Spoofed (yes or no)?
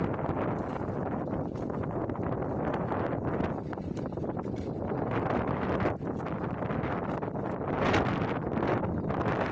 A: no